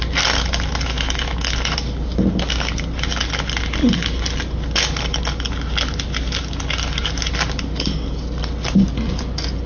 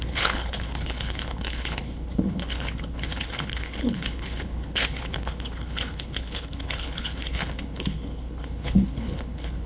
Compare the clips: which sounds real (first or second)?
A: first